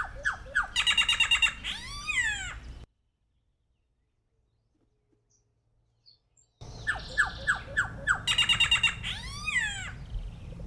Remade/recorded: recorded